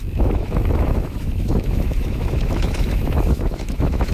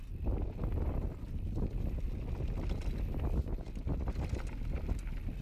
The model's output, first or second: first